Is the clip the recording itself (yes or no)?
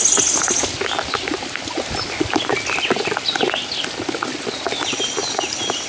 yes